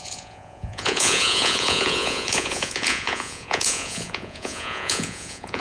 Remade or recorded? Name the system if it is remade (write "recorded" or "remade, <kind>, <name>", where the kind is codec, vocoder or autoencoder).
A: remade, vocoder, Vocos